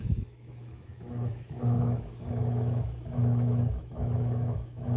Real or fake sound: fake